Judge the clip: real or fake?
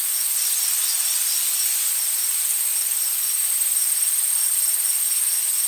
real